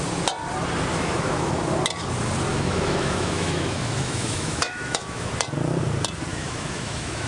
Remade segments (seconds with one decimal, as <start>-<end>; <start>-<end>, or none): 0.9-1.5; 2.5-5.3; 6.3-7.3